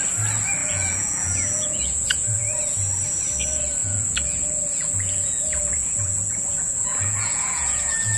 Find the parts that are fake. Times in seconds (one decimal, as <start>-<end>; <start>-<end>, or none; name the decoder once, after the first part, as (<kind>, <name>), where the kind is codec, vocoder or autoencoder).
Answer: 0.6-2.4 (vocoder, Vocos); 3.8-8.2